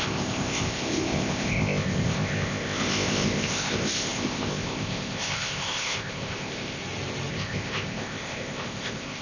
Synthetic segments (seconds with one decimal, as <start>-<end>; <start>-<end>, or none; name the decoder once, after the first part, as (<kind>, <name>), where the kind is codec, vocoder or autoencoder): 0.0-6.8 (codec, ZipCodec); 7.3-9.2